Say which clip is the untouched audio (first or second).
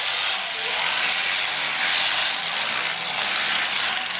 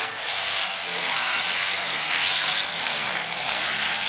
first